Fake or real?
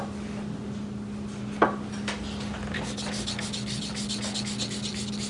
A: real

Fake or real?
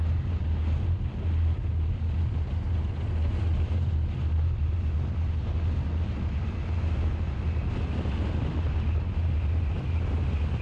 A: real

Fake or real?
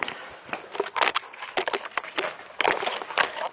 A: real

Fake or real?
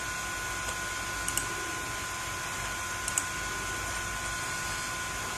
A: real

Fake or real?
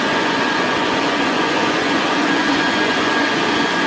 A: fake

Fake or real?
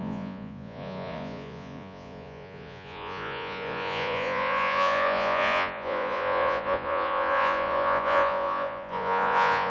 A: fake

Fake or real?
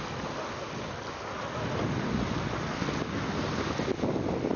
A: real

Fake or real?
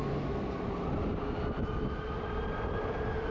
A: real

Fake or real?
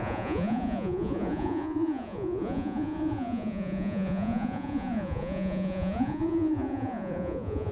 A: fake